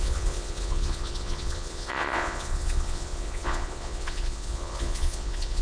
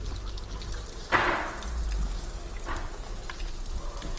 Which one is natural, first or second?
second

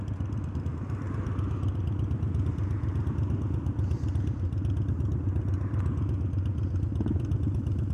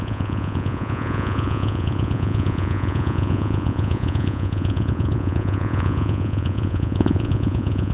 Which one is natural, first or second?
first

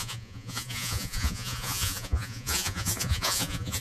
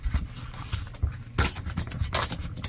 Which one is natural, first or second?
second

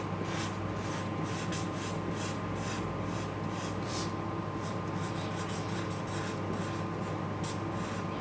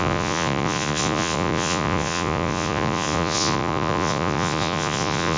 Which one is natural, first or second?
first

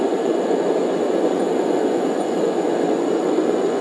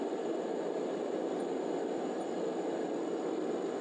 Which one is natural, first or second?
second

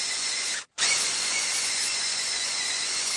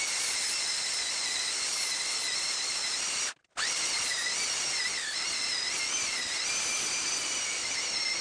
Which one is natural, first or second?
second